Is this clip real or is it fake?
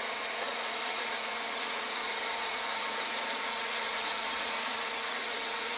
fake